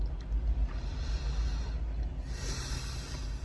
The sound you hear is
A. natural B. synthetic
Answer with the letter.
A